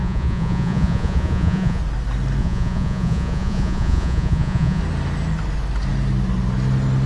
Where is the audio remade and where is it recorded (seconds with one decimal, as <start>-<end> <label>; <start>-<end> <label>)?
0.0-1.8 remade; 1.8-2.4 recorded; 2.4-4.8 remade; 4.8-7.1 recorded